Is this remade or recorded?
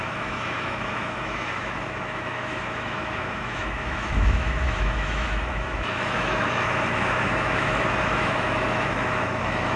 remade